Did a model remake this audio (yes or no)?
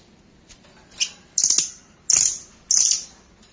no